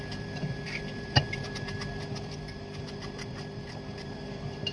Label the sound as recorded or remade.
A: recorded